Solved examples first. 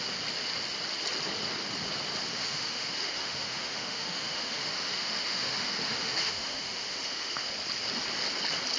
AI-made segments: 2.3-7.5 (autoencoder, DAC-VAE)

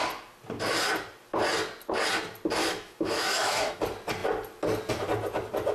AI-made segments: 2.6-3.8 (autoencoder, DAC-VAE)

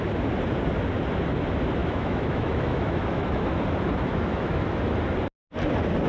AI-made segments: 1.8-3.5 (autoencoder, DAC-VAE); 4.1-4.8

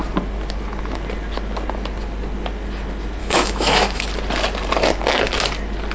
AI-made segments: 3.2-4.0 (autoencoder, DAC-VAE)

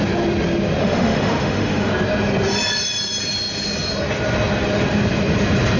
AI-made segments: 0.8-1.9 (autoencoder, DAC-VAE)

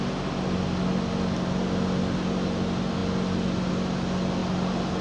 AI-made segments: none

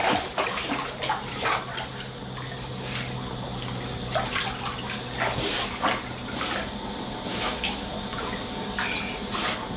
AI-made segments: 7.3-7.9 (autoencoder, DAC-VAE)

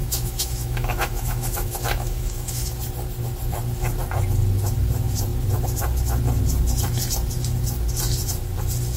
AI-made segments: 0.0-2.7 (autoencoder, DAC-VAE)